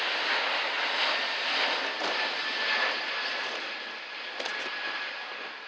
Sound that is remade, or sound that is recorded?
recorded